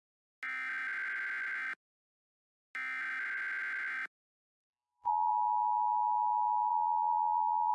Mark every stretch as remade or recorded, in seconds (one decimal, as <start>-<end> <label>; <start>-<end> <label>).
0.0-4.6 recorded; 4.6-5.3 remade; 5.3-6.7 recorded; 6.7-7.7 remade